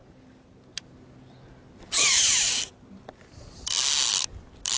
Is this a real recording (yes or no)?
yes